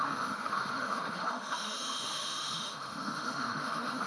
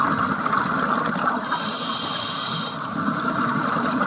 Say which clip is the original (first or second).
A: second